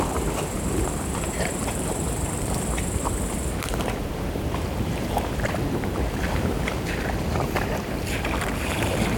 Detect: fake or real fake